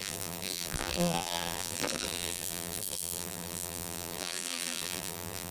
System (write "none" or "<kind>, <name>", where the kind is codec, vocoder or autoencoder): vocoder, BigVGAN v2